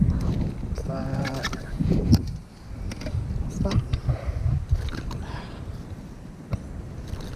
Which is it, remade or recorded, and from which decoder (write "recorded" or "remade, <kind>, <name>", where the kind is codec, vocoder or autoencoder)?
recorded